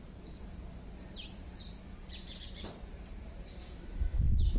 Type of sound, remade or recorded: remade